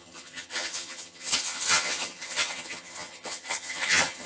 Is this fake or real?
fake